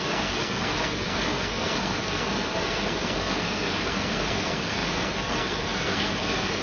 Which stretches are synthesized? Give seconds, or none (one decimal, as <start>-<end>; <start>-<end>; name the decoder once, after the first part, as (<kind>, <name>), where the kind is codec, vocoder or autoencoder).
0.0-6.6 (codec, SNAC)